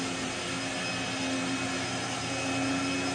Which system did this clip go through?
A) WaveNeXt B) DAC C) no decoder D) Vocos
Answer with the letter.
C